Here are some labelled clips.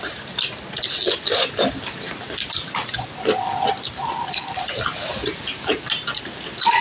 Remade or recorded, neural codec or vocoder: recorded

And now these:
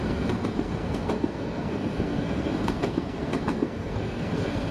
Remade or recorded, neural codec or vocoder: remade, codec, SNAC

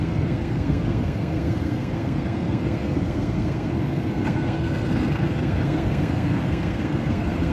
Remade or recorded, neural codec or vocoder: remade, codec, SNAC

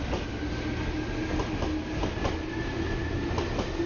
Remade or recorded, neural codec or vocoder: recorded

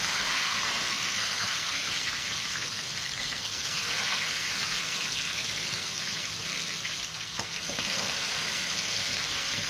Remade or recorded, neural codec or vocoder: remade, codec, SNAC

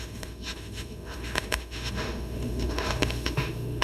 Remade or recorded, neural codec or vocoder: remade, autoencoder, DAC-VAE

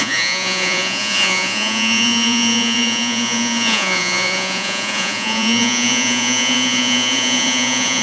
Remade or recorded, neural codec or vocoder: remade, vocoder, Vocos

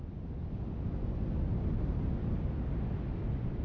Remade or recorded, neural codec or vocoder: recorded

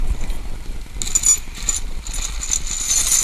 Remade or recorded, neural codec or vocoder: recorded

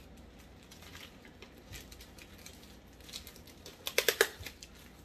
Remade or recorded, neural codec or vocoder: recorded